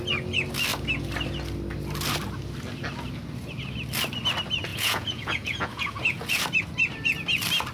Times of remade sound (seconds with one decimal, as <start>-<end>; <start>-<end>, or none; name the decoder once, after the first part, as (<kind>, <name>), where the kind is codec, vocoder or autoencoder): 4.7-6.4 (vocoder, Vocos)